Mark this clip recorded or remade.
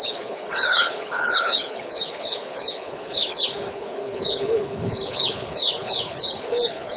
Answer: remade